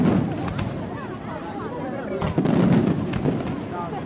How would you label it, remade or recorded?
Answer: recorded